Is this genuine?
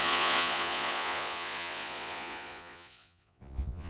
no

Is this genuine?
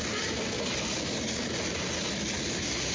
yes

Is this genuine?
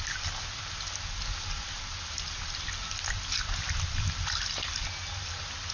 yes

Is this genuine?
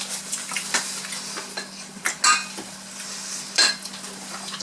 yes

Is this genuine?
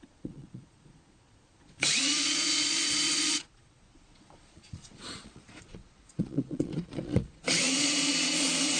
no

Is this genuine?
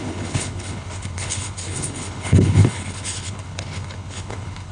no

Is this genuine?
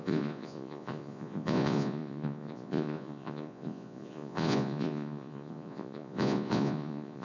no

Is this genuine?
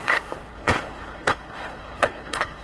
no